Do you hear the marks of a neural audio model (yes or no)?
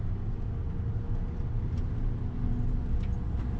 no